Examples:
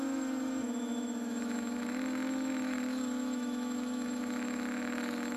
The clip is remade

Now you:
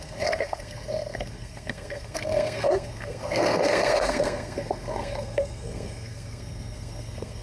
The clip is remade